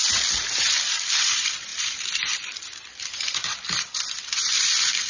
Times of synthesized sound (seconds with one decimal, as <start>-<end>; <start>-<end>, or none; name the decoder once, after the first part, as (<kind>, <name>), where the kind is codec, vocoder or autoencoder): 0.6-5.1 (vocoder, BigVGAN v2)